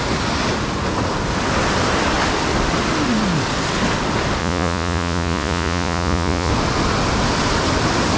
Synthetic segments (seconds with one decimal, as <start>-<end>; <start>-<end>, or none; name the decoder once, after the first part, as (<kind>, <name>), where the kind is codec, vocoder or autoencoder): 4.4-6.5 (vocoder, Vocos)